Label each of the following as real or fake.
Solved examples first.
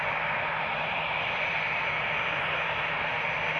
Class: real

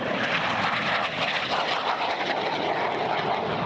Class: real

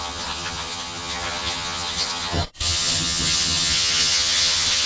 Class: fake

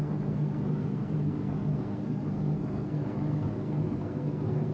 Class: fake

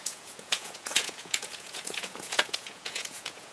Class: fake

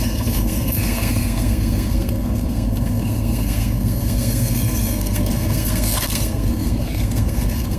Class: fake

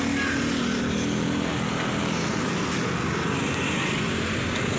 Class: real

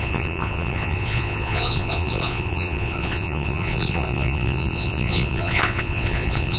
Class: fake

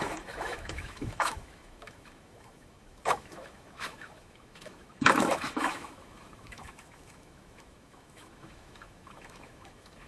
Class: fake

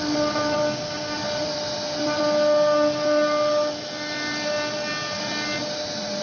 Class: real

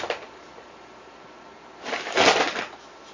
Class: real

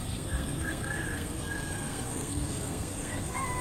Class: fake